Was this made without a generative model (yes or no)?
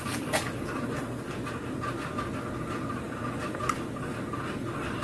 yes